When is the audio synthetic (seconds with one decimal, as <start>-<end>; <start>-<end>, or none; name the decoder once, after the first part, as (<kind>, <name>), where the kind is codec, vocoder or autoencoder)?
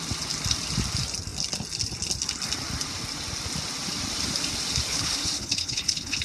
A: 4.9-6.2 (codec, HILCodec)